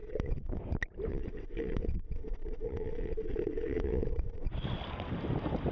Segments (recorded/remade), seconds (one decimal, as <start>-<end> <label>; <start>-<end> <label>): 0.0-0.6 remade; 0.6-1.1 recorded; 1.1-4.5 remade; 4.5-5.7 recorded